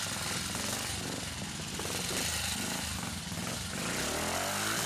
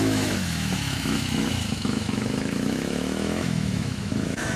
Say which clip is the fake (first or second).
second